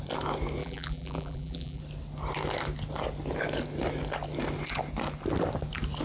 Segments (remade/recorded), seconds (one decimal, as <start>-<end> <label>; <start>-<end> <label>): 0.0-0.6 recorded; 0.6-1.8 remade; 1.8-6.0 recorded